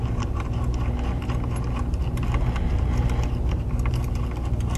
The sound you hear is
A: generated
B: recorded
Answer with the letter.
B